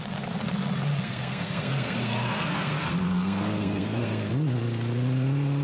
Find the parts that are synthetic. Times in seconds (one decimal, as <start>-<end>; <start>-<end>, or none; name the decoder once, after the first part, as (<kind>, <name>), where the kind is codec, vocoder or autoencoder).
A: 0.9-4.3 (codec, SNAC)